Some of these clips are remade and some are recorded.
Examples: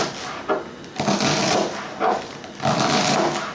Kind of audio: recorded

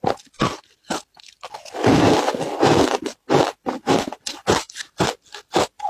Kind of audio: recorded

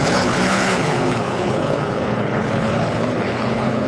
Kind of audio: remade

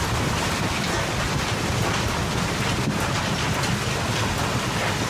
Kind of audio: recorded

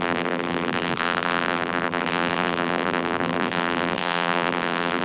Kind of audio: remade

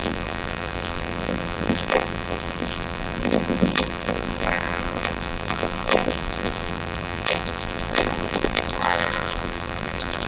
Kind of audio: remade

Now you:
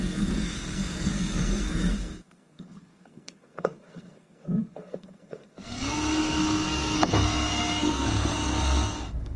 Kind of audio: remade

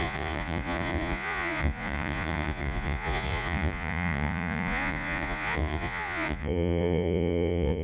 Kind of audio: remade